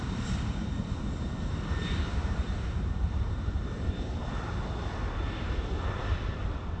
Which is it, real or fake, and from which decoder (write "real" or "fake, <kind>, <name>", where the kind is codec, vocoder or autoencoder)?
fake, vocoder, BigVGAN v2